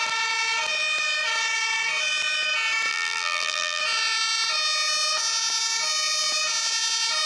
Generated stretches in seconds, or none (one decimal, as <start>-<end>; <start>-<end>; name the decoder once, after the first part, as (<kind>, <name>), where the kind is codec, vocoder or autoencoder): 2.9-3.8 (vocoder, BigVGAN v2)